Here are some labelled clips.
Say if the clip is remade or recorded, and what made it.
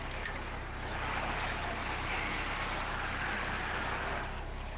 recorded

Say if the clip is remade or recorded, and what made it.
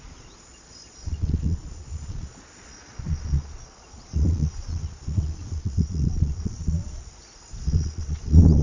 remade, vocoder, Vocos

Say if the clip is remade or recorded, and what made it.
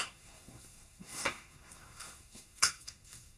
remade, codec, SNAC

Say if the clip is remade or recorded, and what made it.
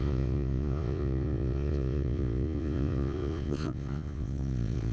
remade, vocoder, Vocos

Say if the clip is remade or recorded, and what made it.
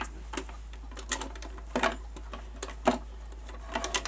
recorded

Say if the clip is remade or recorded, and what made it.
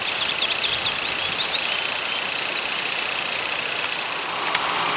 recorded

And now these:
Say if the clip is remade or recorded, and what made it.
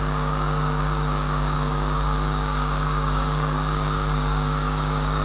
remade, codec, DAC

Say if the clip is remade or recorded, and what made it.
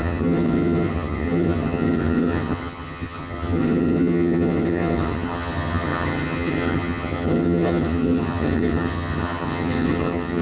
remade, vocoder, HiFi-GAN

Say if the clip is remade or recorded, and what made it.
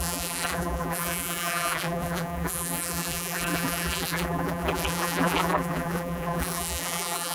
remade, vocoder, BigVGAN v2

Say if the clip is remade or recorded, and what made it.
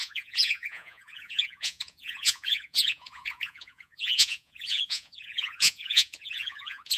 remade, vocoder, Vocos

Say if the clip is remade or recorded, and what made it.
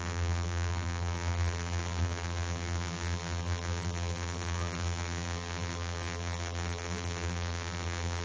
remade, vocoder, BigVGAN v2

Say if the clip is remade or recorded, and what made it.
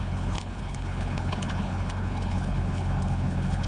remade, codec, HILCodec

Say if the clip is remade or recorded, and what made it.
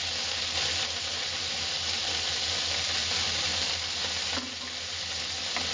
recorded